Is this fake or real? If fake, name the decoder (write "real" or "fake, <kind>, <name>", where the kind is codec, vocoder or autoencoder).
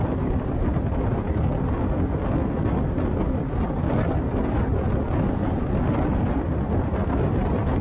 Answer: real